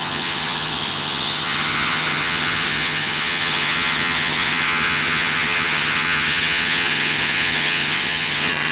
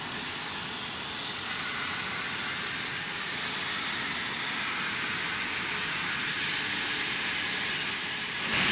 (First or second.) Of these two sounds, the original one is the second